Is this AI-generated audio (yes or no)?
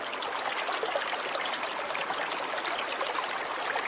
no